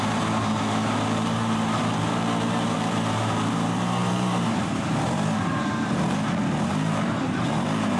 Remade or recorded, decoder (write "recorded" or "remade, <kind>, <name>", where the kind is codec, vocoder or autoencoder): remade, vocoder, BigVGAN v2